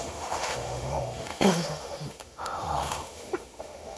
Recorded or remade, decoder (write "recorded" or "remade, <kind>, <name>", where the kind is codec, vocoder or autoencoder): remade, autoencoder, DAC-VAE